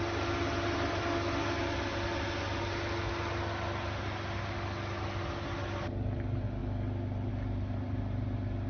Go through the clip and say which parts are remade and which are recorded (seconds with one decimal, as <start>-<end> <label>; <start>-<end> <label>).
0.0-8.7 recorded